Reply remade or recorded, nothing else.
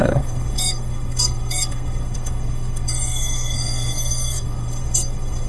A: remade